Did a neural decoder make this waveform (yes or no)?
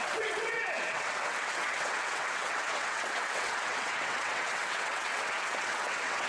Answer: yes